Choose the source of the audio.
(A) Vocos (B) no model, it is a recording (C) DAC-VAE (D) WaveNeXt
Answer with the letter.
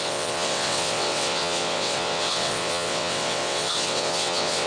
D